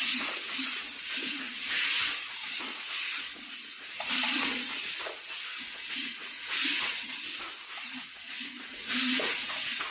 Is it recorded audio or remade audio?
remade